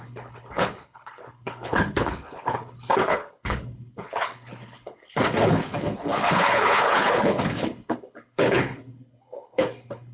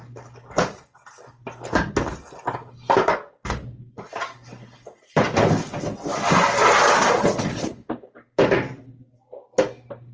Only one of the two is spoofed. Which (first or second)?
first